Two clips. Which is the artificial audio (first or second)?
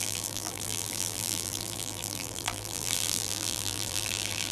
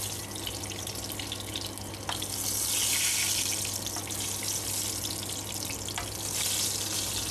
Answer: first